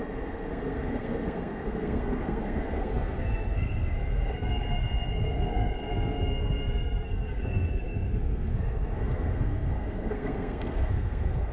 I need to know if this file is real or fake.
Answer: fake